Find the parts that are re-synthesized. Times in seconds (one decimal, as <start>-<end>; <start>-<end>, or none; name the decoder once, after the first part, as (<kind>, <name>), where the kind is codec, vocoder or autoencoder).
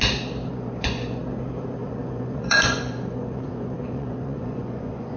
0.5-1.2 (vocoder, Vocos); 1.8-5.2